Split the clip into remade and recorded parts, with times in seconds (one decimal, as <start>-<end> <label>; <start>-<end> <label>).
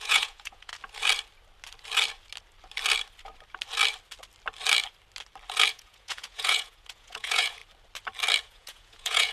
0.0-0.7 remade; 0.7-5.7 recorded; 5.7-7.6 remade; 7.6-8.4 recorded; 8.4-9.3 remade